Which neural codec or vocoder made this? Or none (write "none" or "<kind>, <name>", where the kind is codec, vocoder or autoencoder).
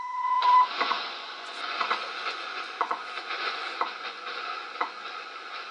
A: vocoder, Vocos